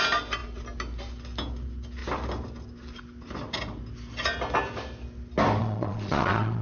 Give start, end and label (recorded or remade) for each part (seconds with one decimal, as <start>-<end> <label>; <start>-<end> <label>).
0.0-5.6 recorded; 5.6-6.6 remade